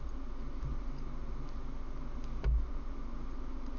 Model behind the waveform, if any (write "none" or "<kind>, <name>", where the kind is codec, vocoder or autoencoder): none